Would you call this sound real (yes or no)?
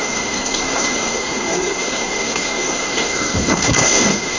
no